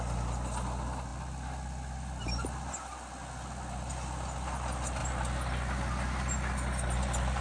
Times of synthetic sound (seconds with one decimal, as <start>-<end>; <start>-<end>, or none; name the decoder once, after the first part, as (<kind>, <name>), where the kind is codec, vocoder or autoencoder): none